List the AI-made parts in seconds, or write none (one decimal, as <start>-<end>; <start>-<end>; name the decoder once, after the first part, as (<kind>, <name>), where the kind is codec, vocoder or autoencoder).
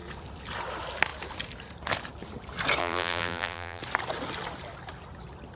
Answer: 2.8-3.8 (vocoder, BigVGAN v2)